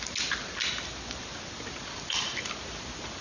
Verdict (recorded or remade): recorded